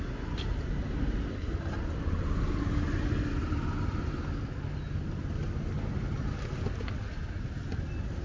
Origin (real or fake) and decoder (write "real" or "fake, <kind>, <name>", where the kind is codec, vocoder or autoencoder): real